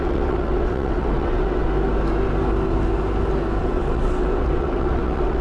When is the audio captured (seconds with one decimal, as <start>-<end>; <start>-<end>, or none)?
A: 1.6-3.6

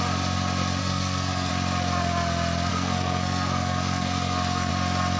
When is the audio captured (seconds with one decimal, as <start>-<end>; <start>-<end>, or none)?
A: 0.0-0.8; 1.5-2.7; 4.7-5.2

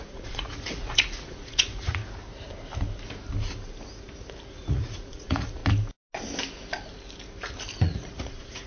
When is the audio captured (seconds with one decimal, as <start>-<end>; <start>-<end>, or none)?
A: 2.0-4.5; 5.6-7.8

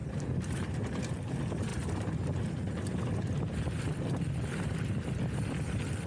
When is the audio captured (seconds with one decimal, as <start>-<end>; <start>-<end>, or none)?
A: 1.0-6.1

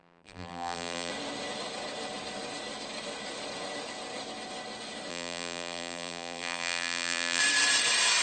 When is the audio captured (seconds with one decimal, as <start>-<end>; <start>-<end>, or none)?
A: 1.1-5.1; 7.4-8.2

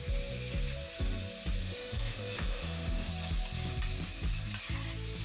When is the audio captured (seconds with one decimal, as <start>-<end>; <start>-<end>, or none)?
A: 0.0-1.6; 3.1-5.2

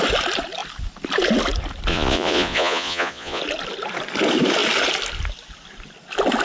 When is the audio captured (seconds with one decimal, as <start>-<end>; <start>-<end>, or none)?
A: 0.0-1.9; 3.4-6.4